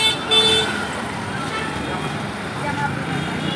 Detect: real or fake real